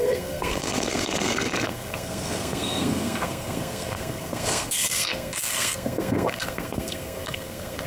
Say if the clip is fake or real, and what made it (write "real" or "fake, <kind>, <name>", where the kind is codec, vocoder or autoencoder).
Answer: fake, codec, SNAC